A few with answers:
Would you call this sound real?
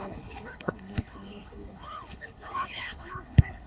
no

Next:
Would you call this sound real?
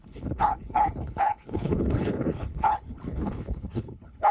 no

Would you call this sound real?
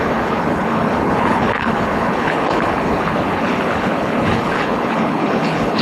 no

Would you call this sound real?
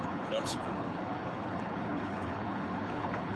no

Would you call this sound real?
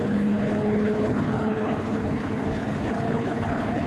no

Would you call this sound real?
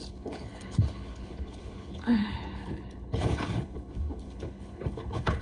no